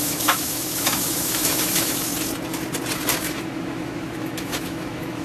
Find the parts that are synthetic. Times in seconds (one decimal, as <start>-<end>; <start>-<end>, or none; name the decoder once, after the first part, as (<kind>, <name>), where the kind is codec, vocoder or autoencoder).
0.0-2.1 (autoencoder, DAC-VAE); 3.2-5.2